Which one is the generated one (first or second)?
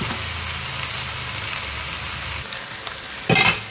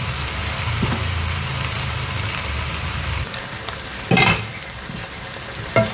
second